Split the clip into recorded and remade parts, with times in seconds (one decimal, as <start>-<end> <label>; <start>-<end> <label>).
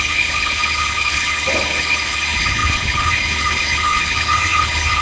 0.0-5.0 remade